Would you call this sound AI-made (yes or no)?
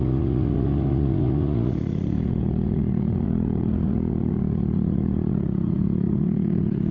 yes